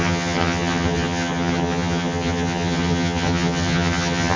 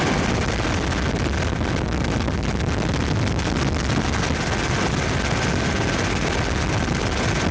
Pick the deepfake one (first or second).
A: first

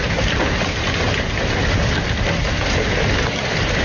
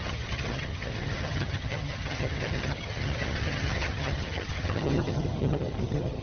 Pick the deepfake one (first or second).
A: second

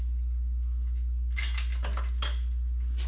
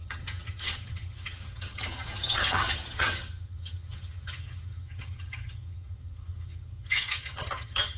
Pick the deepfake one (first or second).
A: second